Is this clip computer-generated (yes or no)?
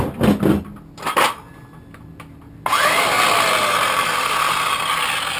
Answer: no